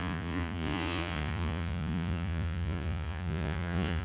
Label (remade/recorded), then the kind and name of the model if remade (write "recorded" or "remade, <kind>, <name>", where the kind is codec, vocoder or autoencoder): remade, vocoder, Vocos